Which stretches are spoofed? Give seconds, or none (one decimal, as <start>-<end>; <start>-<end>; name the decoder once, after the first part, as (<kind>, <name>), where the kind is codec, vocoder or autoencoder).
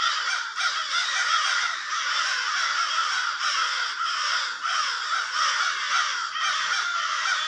0.0-3.6 (vocoder, BigVGAN v2); 6.0-7.5